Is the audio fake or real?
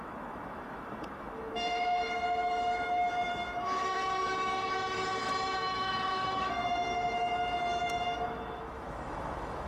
fake